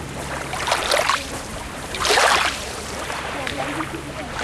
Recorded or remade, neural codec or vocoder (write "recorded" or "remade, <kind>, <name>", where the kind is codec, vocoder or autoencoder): remade, vocoder, BigVGAN v2